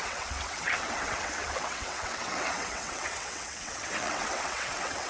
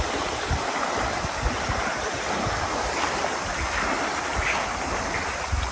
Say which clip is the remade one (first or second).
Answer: first